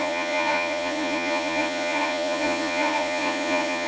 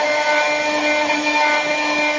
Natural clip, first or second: second